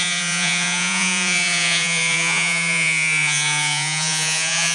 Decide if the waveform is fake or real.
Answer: fake